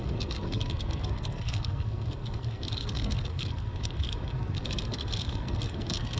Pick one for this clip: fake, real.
fake